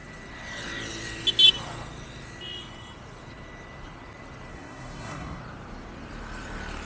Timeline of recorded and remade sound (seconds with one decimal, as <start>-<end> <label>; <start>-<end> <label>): 0.0-4.5 recorded; 4.5-5.4 remade; 5.4-6.8 recorded